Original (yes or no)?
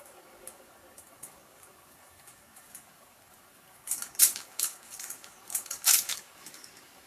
no